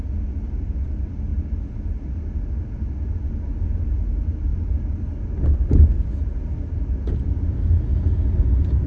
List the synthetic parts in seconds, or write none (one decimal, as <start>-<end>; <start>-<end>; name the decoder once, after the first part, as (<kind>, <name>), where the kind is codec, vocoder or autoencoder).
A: none